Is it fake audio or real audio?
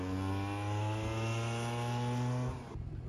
real